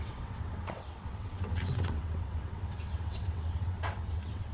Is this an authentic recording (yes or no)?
no